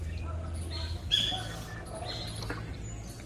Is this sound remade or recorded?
recorded